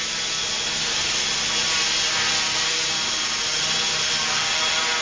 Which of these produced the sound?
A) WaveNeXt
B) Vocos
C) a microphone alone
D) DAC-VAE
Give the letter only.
C